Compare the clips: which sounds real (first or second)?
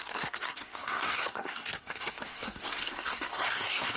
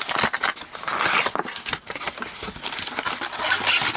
second